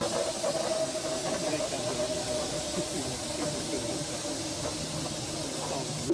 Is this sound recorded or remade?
recorded